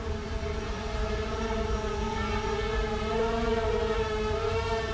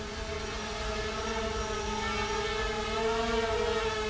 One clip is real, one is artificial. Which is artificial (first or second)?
first